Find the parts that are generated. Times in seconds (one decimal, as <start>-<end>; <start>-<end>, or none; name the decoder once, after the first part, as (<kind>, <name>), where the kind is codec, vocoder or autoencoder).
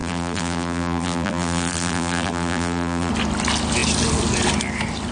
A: 0.0-3.1 (vocoder, BigVGAN v2)